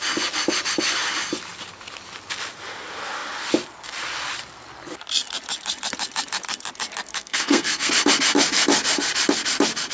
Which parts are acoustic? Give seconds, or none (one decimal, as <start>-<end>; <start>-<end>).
0.0-7.1; 7.9-9.9